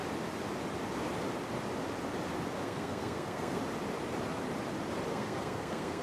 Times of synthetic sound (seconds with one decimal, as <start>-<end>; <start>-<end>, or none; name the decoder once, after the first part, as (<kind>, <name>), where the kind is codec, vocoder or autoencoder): 2.6-3.6 (codec, SNAC); 5.1-6.0